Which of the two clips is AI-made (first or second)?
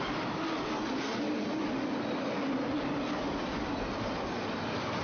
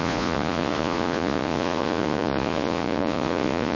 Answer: second